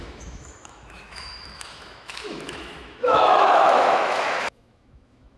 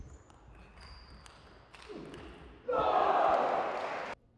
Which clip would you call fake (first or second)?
first